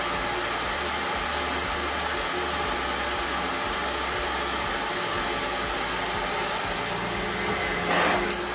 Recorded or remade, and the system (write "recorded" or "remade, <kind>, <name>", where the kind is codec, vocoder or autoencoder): recorded